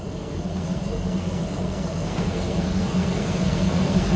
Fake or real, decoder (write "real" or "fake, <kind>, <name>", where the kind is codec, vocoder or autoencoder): fake, codec, SNAC